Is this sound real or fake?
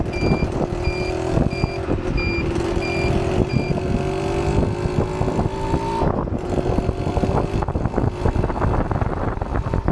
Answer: real